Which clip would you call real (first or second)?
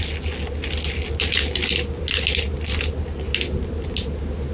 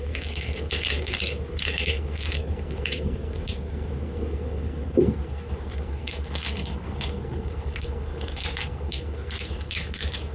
first